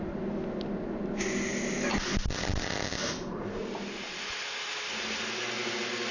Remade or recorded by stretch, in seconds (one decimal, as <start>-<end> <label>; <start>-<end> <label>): 0.0-6.1 recorded